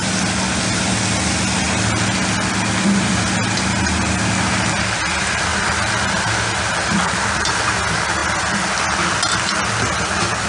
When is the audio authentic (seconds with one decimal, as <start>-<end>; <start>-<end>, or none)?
0.0-5.5; 7.5-10.5